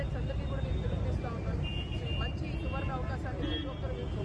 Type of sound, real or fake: real